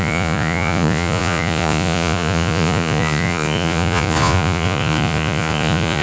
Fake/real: fake